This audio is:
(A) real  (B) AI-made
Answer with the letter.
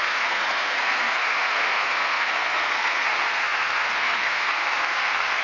B